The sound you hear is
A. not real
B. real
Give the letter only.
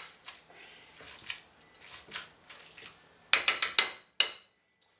B